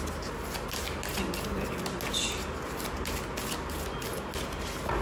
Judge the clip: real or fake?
real